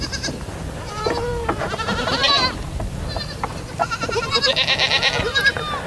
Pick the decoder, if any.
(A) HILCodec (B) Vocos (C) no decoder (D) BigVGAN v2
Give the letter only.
C